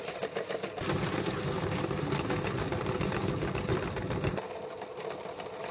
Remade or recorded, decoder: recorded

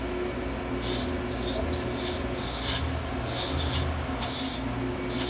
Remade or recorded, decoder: recorded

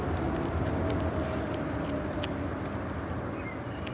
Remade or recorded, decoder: recorded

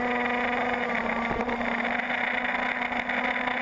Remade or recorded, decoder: recorded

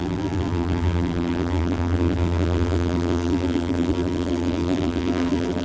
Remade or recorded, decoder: remade, vocoder, BigVGAN v2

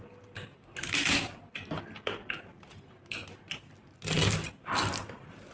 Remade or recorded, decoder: recorded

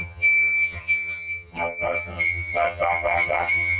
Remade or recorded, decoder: remade, vocoder, HiFi-GAN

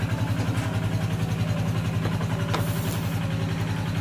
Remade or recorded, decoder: recorded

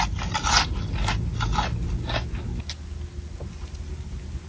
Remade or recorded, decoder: recorded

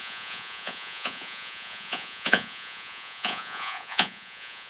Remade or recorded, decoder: remade, vocoder, Vocos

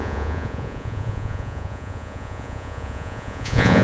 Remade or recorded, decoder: remade, vocoder, Vocos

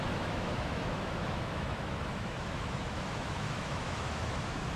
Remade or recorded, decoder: remade, autoencoder, DAC-VAE